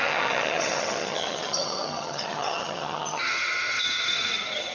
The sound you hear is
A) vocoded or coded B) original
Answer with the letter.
A